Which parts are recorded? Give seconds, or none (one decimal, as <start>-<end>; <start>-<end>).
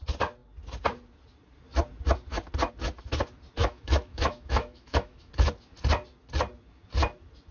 0.0-3.6; 5.3-7.5